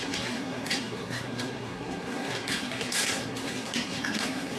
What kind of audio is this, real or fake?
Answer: fake